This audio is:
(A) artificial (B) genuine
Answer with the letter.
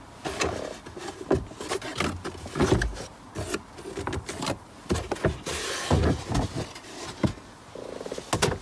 B